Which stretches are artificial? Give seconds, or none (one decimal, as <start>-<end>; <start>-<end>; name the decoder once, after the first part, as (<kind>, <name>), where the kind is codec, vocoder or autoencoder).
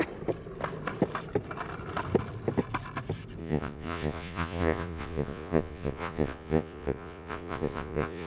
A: 3.4-8.3 (vocoder, Vocos)